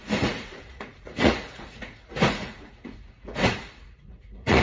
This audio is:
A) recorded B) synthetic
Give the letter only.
B